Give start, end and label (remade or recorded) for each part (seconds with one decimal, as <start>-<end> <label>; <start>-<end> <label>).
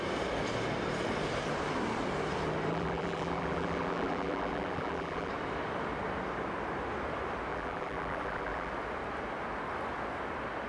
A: 0.0-2.7 recorded; 2.7-5.3 remade; 5.3-7.5 recorded; 7.5-8.7 remade; 8.7-10.7 recorded